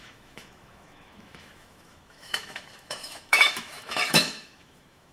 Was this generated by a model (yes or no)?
yes